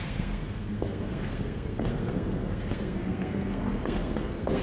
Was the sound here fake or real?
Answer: fake